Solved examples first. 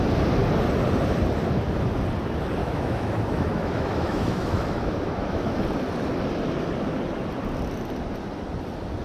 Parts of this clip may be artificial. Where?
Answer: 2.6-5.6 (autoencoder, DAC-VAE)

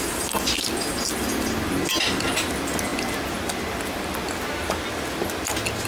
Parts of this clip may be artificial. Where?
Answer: none

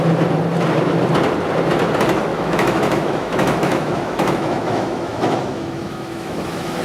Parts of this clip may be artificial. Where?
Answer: 2.3-6.8 (autoencoder, DAC-VAE)

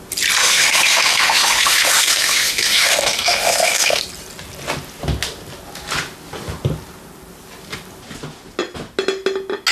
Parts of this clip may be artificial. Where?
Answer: 0.4-4.0 (autoencoder, DAC-VAE)

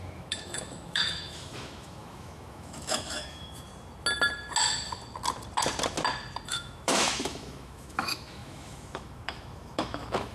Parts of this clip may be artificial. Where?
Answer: 0.0-3.7 (autoencoder, DAC-VAE); 6.5-10.3

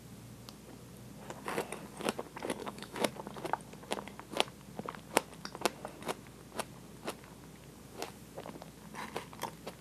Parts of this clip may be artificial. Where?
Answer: 2.6-3.1 (autoencoder, DAC-VAE)